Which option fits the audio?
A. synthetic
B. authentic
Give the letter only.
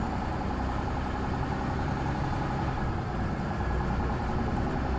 B